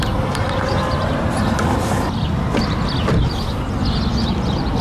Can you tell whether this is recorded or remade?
recorded